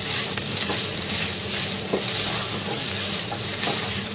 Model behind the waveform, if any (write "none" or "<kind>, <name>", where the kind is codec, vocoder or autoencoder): vocoder, BigVGAN v2